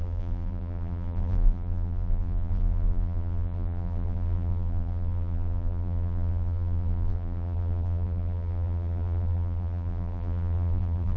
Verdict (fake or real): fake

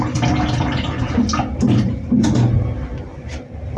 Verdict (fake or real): real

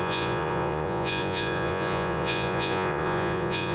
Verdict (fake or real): fake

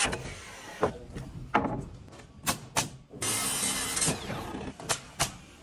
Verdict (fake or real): real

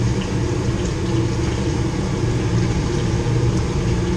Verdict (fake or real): real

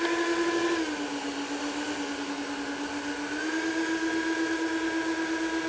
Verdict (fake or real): real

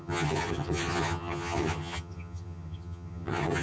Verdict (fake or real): fake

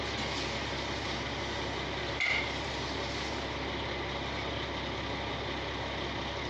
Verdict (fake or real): real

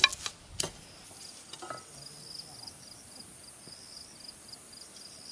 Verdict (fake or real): real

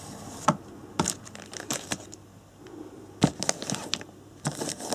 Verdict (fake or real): real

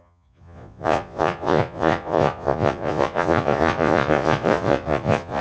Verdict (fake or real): fake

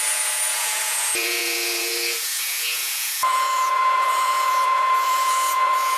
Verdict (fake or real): fake